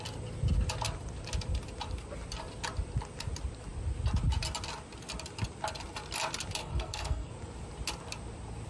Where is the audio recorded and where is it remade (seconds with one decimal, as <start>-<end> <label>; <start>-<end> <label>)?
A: 0.0-6.6 recorded; 6.6-7.3 remade; 7.3-8.7 recorded